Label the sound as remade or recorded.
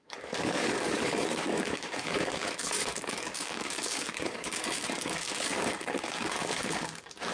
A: remade